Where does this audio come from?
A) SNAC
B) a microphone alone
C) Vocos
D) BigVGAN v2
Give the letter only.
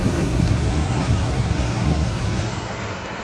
A